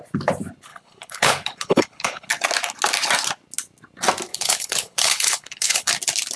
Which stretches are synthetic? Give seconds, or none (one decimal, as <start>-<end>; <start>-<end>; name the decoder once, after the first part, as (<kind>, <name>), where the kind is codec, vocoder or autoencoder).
0.7-2.3 (codec, HILCodec); 4.3-5.9